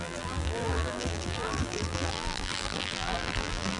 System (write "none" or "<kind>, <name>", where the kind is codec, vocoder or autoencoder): vocoder, BigVGAN v2